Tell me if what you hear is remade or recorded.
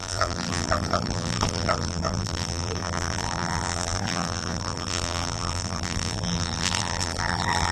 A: remade